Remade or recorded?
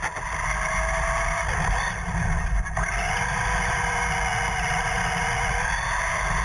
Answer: recorded